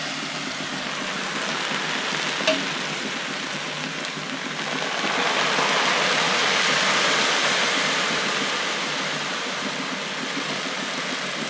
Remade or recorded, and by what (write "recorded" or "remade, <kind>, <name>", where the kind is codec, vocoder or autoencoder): recorded